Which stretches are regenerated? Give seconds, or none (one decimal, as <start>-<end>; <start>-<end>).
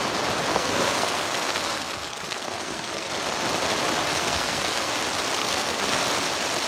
0.5-3.1; 4.1-4.9; 5.4-6.0